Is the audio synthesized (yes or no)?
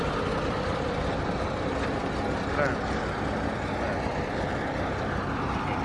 no